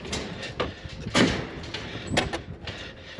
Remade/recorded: recorded